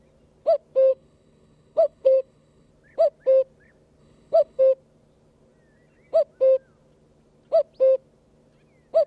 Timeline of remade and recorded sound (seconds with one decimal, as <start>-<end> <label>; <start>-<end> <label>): 0.0-0.9 recorded; 0.9-2.7 remade; 2.7-4.0 recorded; 4.0-4.6 remade; 4.6-9.1 recorded